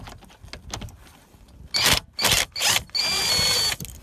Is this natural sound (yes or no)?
yes